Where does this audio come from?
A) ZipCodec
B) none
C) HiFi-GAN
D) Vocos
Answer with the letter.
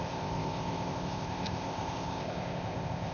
A